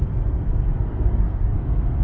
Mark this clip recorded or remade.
remade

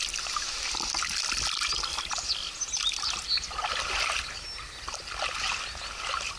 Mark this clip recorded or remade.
recorded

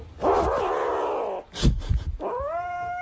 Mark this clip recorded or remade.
recorded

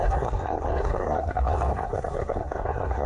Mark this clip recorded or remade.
remade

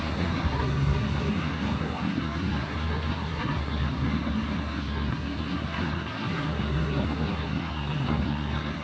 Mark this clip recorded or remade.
remade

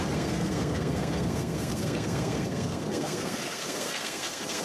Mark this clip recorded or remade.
remade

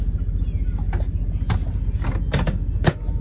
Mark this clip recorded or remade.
recorded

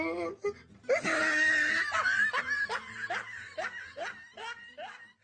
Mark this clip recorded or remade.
recorded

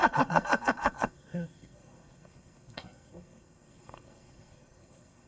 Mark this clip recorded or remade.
remade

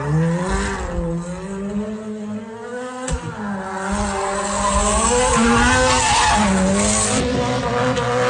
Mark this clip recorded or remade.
recorded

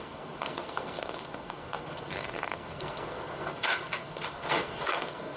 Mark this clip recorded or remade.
remade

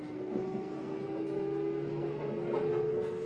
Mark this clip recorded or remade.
remade